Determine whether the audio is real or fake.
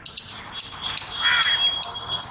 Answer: real